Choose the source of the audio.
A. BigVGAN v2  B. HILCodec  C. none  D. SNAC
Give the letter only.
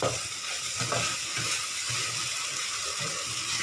C